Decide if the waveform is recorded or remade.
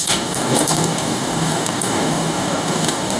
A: remade